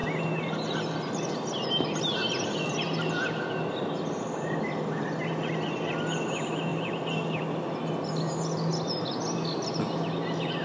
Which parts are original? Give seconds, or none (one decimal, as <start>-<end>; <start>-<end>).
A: 0.0-10.6